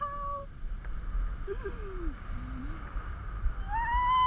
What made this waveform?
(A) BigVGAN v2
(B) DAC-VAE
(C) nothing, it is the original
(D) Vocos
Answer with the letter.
C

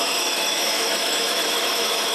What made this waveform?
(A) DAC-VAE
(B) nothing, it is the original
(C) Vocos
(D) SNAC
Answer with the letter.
A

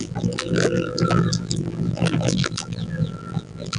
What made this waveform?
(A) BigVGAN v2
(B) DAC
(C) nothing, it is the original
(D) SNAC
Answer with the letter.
A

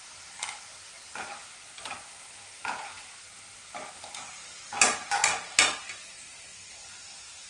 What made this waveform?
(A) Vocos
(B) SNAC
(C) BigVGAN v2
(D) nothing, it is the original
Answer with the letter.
D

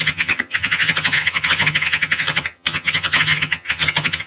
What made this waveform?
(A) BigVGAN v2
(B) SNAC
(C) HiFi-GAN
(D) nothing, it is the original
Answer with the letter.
C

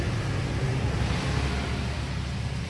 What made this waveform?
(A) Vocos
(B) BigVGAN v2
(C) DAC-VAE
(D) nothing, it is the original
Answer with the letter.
B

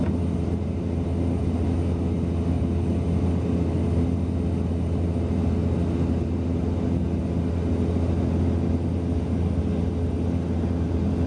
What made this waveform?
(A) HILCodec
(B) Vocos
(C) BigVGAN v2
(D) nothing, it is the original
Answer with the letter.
D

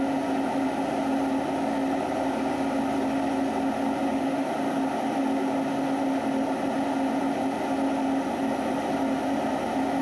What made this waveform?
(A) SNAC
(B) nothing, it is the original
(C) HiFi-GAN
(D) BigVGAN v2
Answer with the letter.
B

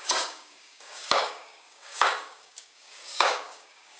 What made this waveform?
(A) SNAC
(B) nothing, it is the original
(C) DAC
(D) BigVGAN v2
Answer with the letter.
C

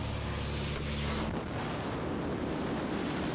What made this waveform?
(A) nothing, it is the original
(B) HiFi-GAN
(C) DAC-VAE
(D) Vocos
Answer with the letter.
A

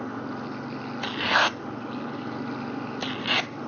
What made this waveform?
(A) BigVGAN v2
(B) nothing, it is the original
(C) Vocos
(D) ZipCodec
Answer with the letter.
B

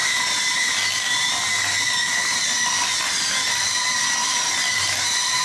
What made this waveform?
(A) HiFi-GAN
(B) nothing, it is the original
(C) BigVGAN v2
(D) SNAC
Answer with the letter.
B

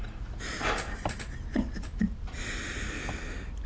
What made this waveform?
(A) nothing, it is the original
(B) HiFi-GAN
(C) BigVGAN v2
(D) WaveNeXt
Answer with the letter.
A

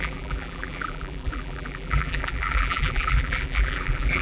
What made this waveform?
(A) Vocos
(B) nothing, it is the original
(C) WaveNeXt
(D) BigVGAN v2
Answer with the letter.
D